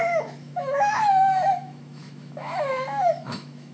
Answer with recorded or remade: remade